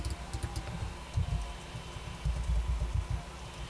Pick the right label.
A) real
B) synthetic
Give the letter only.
A